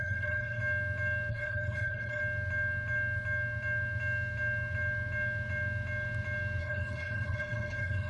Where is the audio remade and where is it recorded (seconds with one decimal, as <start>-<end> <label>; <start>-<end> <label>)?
0.0-0.6 remade; 0.6-1.3 recorded; 1.3-2.2 remade; 2.2-6.6 recorded; 6.6-8.1 remade